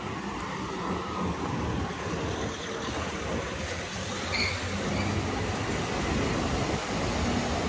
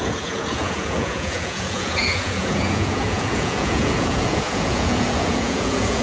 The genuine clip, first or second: first